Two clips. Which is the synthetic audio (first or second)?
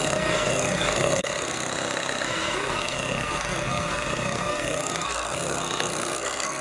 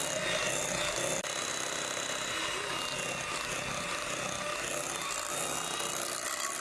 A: first